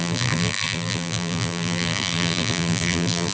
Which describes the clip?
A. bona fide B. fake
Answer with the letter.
B